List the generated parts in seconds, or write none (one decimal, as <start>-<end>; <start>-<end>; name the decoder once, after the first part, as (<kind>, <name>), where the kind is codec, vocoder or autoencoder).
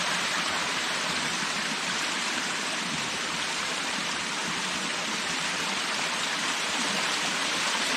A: 0.0-4.4 (vocoder, BigVGAN v2); 5.0-8.0